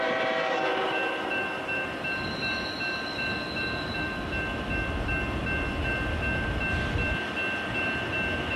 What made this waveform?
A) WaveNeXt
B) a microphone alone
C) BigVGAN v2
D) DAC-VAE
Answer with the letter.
B